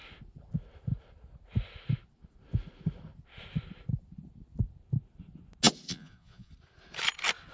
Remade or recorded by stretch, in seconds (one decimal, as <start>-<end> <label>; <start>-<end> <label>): 0.0-5.9 recorded; 5.9-6.5 remade; 6.5-7.5 recorded

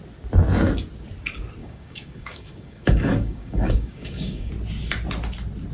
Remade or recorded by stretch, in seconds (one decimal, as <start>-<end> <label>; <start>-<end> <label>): 0.0-1.6 recorded; 1.6-4.5 remade; 4.5-5.7 recorded

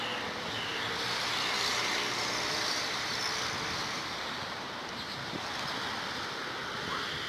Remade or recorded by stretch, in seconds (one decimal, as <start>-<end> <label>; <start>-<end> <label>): 0.0-0.7 recorded; 0.7-3.2 remade; 3.2-3.8 recorded; 3.8-5.4 remade; 5.4-7.3 recorded

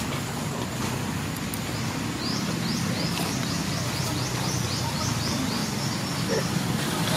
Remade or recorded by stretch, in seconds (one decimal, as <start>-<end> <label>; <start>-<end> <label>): 0.0-7.2 recorded

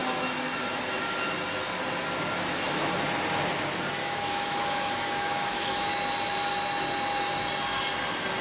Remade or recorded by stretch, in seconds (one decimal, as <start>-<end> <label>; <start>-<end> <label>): 0.0-4.0 recorded; 4.0-5.9 remade; 5.9-8.4 recorded

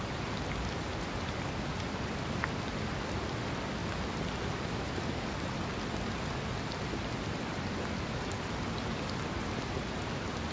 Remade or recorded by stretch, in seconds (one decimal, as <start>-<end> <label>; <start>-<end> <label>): 0.0-10.5 recorded